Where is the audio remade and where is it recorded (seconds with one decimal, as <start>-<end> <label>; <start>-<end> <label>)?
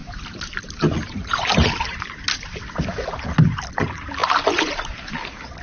0.0-5.6 recorded